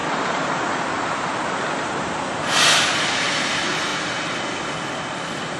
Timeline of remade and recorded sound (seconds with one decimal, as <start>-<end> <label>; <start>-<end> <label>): 0.0-3.4 remade; 3.4-5.6 recorded